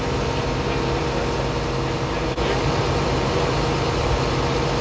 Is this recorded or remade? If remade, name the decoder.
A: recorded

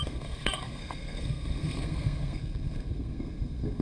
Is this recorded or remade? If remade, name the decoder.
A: remade, codec, SNAC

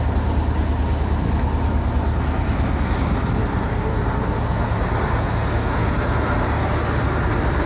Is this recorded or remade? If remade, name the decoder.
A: recorded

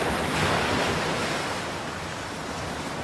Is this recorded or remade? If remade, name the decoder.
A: recorded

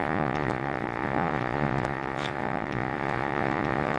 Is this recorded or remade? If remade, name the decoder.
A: remade, vocoder, Vocos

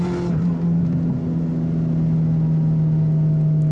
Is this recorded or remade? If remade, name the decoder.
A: recorded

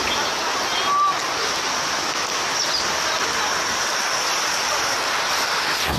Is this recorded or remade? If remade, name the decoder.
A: recorded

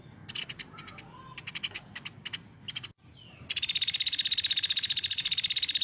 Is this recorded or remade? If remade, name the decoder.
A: recorded